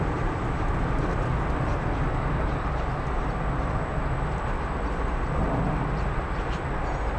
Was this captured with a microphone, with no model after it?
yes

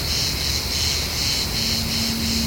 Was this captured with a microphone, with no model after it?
yes